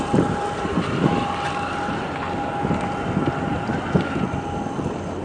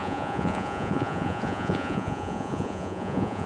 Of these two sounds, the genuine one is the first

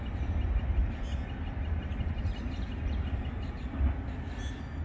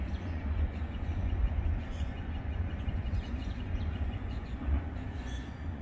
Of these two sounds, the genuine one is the first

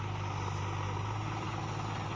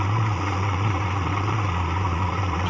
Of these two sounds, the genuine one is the first